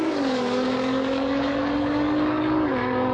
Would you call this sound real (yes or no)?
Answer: no